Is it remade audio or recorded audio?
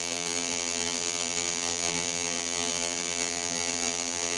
remade